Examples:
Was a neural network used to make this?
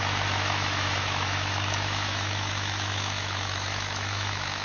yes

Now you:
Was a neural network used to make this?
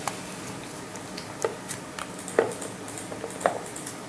no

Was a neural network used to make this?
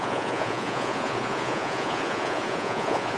yes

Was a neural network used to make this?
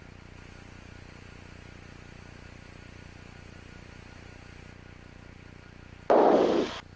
no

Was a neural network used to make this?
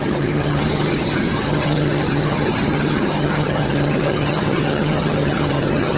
yes